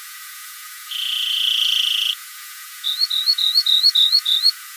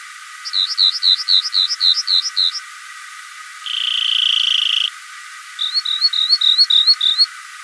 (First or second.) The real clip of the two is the second